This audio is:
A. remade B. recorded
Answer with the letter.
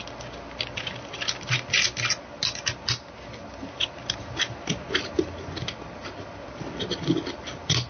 B